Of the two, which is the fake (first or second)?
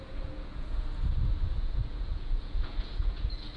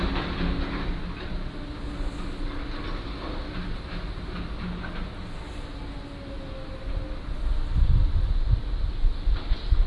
first